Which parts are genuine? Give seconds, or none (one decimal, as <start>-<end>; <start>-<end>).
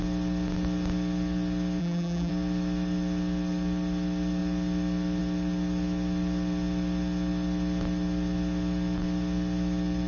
0.0-1.8; 2.3-10.1